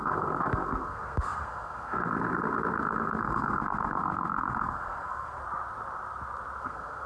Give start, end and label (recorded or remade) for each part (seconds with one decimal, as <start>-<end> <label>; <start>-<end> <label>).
0.0-5.4 remade; 5.4-6.6 recorded; 6.6-7.1 remade